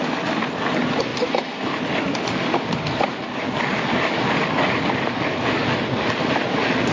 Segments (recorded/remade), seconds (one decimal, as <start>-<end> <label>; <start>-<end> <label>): 0.0-6.9 recorded